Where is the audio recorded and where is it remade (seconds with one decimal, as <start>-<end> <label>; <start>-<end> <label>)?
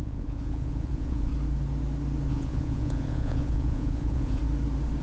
0.0-1.3 remade; 1.3-2.3 recorded; 2.3-4.4 remade; 4.4-5.0 recorded